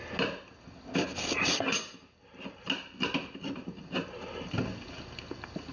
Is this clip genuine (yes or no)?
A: yes